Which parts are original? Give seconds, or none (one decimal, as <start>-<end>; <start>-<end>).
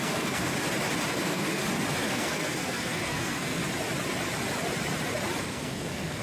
0.5-1.1; 1.6-2.1; 3.6-5.4